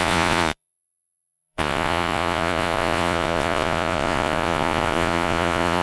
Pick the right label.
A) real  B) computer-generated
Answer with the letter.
B